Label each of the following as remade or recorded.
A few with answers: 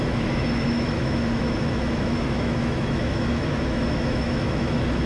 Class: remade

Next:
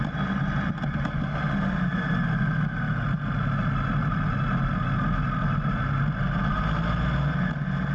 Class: recorded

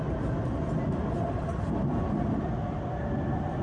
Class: recorded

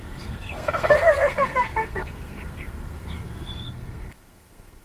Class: remade